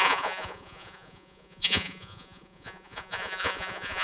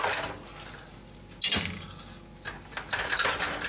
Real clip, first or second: second